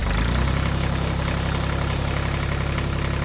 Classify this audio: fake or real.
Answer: real